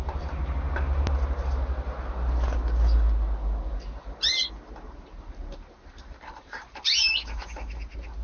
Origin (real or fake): real